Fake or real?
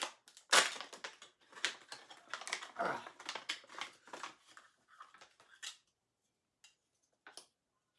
real